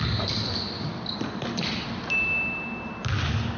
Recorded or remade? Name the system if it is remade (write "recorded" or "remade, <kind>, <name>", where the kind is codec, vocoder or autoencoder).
recorded